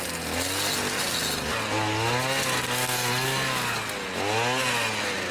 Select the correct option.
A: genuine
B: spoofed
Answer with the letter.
A